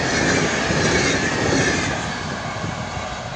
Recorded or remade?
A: recorded